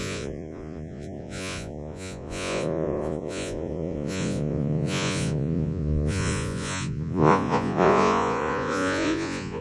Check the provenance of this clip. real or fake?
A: fake